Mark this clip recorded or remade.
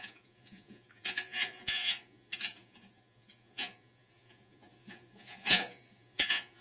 remade